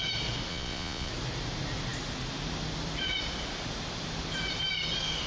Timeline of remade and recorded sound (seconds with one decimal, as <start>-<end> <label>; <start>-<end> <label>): 0.0-0.5 recorded; 0.5-1.1 remade; 1.1-5.3 recorded